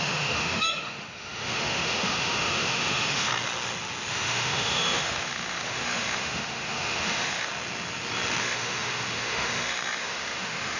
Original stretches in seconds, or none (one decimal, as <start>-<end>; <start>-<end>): 3.3-4.1; 7.5-8.4

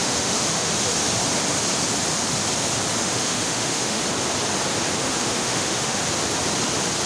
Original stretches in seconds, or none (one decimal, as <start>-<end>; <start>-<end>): 0.7-3.0; 4.0-5.0; 6.0-7.1